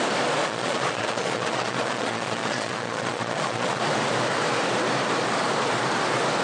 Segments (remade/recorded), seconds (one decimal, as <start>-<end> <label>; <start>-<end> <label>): 0.0-0.4 recorded; 0.4-3.8 remade; 3.8-6.4 recorded